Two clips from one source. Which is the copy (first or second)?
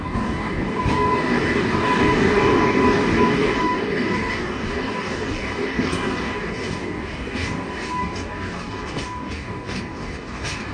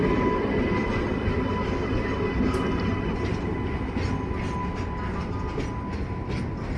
first